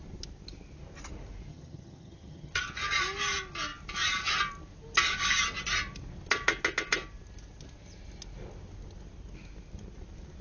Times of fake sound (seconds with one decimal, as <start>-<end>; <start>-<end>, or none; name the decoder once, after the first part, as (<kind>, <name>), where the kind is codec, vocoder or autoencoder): 1.5-2.6 (vocoder, HiFi-GAN)